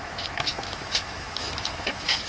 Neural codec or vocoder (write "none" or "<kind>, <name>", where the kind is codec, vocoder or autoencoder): autoencoder, DAC-VAE